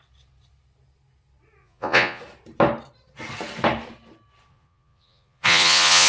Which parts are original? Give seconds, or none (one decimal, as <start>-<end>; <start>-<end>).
0.0-1.6; 2.2-4.5